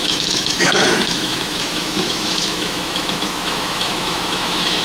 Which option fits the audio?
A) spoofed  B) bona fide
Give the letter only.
A